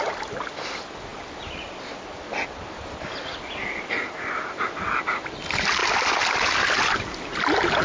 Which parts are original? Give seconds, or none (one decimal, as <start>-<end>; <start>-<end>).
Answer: 0.0-5.8